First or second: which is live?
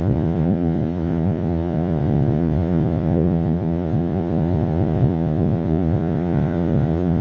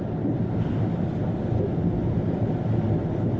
second